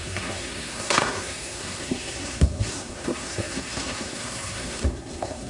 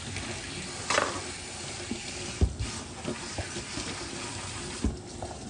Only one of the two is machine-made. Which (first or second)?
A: first